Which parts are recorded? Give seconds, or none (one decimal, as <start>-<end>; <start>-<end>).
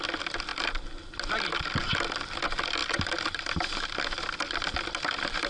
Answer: 0.0-5.5